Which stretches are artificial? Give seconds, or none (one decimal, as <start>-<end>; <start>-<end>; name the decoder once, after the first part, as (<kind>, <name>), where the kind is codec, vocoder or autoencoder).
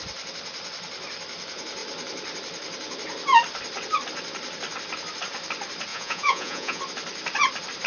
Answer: 5.9-6.8 (vocoder, Vocos)